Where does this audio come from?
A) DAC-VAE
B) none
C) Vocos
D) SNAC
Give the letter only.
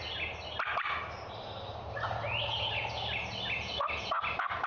B